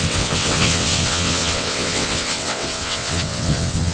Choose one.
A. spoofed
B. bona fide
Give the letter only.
A